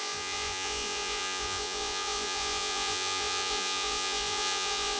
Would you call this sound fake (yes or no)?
yes